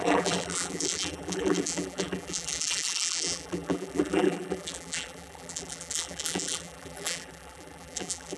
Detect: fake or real fake